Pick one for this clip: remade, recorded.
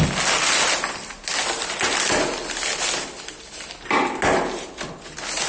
recorded